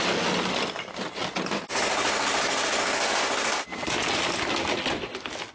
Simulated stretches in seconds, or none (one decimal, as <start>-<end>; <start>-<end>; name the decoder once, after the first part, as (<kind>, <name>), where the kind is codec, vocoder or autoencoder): none

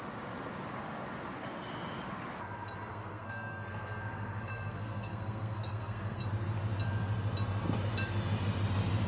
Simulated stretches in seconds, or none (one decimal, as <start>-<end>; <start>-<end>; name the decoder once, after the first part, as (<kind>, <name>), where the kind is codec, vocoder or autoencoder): 2.9-6.2 (codec, SNAC)

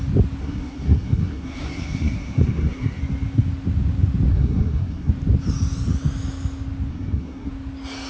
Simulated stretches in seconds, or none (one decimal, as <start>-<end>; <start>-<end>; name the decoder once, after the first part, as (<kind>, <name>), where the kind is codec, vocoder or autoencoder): 0.4-3.0 (codec, SNAC); 4.3-5.1; 6.9-7.5

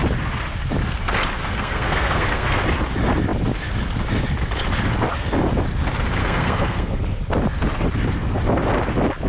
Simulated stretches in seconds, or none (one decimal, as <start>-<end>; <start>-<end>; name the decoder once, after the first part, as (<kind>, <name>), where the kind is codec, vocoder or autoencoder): 1.4-2.6 (codec, SNAC); 6.2-7.0

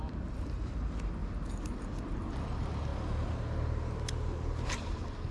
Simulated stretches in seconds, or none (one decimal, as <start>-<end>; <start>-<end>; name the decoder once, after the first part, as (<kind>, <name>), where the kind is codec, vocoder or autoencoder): 1.2-2.0 (vocoder, BigVGAN v2)